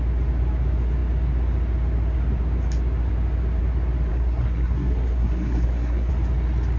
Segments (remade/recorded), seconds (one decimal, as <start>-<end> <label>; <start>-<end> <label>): 0.0-4.1 recorded; 4.1-6.1 remade; 6.1-6.8 recorded